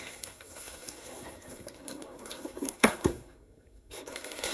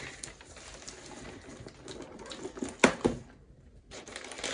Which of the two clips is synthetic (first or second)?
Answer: first